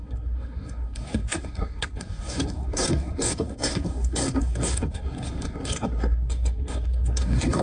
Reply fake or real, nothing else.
fake